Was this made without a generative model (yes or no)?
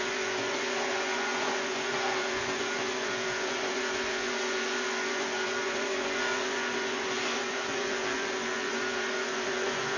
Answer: no